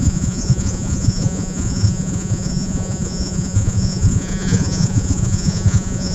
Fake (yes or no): yes